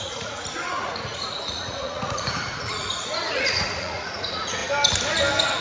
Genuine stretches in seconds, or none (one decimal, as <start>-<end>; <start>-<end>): 4.6-5.6